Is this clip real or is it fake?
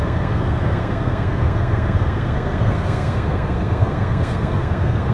fake